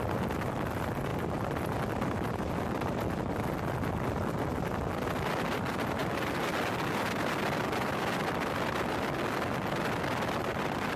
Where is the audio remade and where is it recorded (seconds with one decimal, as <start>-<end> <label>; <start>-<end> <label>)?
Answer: 0.0-11.0 recorded